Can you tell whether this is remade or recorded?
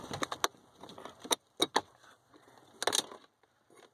recorded